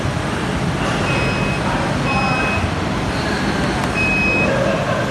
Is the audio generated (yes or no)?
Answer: no